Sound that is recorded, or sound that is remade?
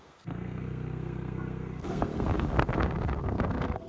remade